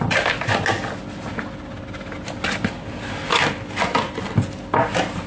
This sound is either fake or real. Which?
real